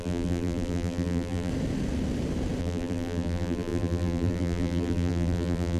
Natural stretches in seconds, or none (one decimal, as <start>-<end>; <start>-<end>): 1.5-2.6